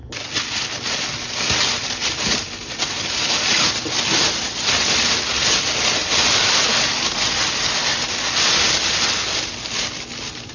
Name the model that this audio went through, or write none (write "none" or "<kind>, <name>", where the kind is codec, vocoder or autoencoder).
none